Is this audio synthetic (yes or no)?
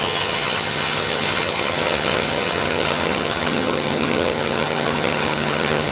yes